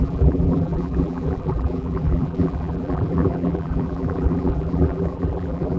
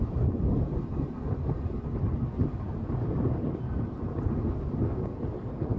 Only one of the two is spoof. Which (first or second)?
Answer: first